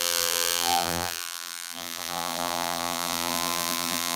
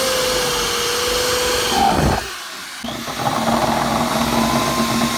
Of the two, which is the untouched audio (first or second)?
second